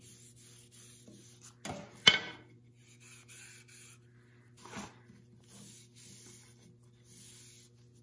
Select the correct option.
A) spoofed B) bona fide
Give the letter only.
B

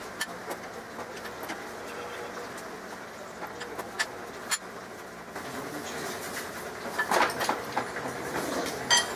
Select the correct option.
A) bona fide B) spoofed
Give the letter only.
A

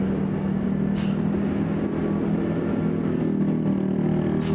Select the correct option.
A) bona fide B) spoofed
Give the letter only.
A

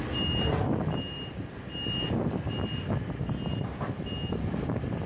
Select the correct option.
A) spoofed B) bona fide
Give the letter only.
B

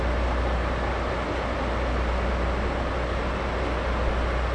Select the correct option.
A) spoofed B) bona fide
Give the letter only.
B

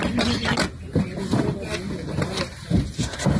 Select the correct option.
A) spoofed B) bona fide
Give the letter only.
B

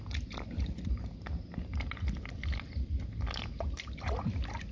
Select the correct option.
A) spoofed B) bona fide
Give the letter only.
B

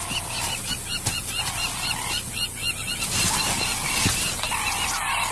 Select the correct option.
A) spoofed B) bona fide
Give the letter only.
B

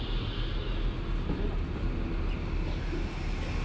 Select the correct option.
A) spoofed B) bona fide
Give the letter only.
B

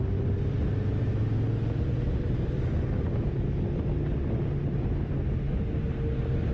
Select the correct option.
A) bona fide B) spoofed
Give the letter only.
A